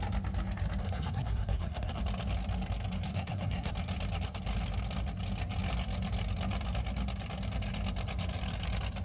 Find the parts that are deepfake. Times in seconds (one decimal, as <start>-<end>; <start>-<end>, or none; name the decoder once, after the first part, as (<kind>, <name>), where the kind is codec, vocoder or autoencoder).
0.8-2.0 (codec, SNAC); 3.1-3.7